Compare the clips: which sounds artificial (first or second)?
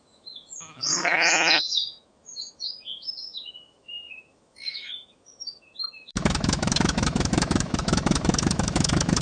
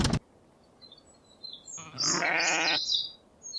first